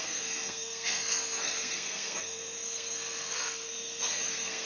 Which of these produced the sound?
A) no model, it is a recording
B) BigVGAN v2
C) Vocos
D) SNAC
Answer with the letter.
D